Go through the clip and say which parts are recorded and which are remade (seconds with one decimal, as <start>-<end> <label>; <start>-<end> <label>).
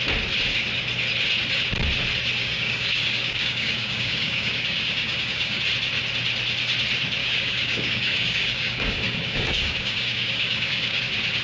0.0-2.4 recorded; 2.4-5.6 remade; 5.6-7.2 recorded; 7.2-11.0 remade; 11.0-11.4 recorded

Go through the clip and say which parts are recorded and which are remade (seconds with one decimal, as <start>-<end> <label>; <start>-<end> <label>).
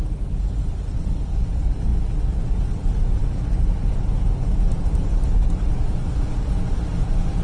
0.0-7.4 recorded